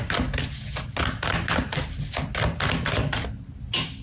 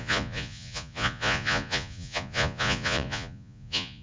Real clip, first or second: first